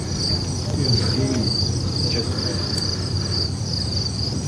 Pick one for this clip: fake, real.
real